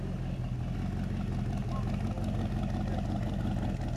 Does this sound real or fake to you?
real